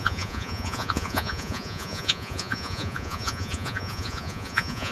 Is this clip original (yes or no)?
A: no